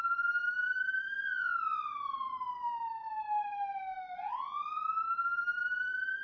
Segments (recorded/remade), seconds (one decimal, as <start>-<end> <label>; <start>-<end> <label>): 0.0-6.2 recorded